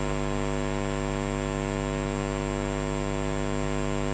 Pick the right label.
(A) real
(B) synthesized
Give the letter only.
A